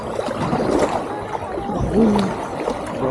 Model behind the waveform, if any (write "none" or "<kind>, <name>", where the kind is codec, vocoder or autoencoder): none